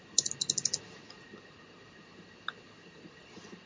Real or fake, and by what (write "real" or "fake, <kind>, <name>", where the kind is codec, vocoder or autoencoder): real